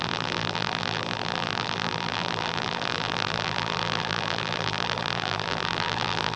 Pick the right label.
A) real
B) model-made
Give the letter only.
B